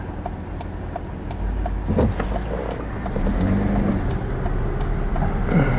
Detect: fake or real real